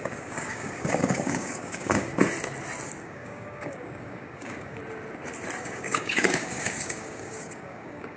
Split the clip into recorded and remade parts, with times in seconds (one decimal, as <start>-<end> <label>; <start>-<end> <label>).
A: 0.0-2.1 remade; 2.1-3.0 recorded; 3.0-4.8 remade; 4.8-5.6 recorded; 5.6-8.2 remade